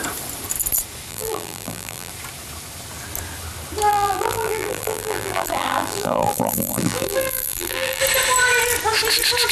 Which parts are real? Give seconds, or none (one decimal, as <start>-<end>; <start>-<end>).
0.0-1.1; 2.1-3.9; 8.0-9.5